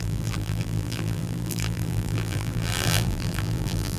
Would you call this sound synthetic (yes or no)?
yes